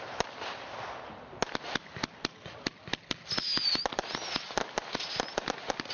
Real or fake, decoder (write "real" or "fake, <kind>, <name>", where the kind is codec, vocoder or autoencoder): real